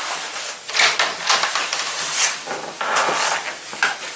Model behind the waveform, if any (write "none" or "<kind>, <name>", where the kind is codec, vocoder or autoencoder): none